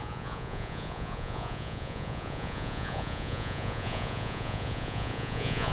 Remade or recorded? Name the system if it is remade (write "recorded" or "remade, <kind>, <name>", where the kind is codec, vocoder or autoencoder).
remade, vocoder, Vocos